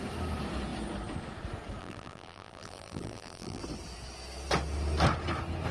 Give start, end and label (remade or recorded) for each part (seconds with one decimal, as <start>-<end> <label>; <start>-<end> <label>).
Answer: 0.0-1.8 recorded; 1.8-3.6 remade; 3.6-5.7 recorded